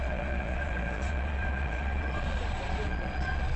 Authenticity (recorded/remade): remade